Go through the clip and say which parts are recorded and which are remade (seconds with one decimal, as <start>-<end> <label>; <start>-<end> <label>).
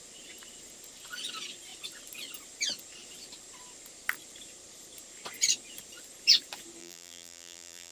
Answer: 0.0-6.8 recorded; 6.8-7.9 remade